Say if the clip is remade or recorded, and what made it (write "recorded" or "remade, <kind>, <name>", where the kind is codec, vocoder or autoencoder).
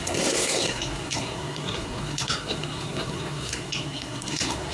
remade, codec, SNAC